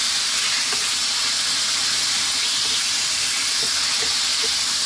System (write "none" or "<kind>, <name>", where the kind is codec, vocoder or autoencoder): none